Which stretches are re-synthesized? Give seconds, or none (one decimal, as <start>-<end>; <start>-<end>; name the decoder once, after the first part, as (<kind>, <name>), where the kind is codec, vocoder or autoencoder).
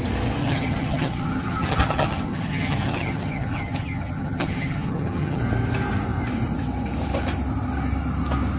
0.4-5.4 (vocoder, HiFi-GAN)